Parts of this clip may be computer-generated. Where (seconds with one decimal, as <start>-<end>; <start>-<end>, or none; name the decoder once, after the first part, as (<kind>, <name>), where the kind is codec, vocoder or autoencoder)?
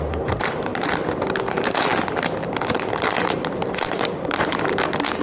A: 0.0-0.7 (vocoder, BigVGAN v2); 1.4-1.9; 3.2-5.2